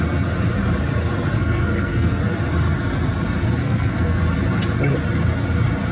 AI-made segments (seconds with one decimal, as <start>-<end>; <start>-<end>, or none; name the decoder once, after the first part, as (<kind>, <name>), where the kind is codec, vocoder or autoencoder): 1.4-2.2 (codec, SNAC); 3.6-4.2